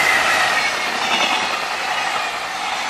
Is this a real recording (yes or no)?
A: yes